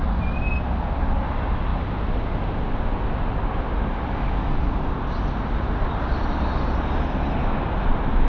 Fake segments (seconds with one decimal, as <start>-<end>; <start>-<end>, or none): none